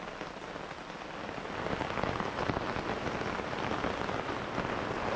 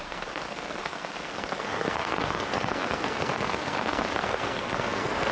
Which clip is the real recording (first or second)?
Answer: first